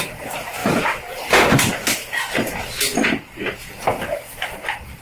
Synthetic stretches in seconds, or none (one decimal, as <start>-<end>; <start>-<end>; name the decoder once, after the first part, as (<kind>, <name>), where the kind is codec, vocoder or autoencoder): 0.6-1.3 (vocoder, BigVGAN v2)